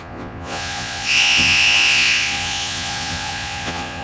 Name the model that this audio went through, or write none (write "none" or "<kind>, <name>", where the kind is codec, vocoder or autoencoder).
vocoder, Vocos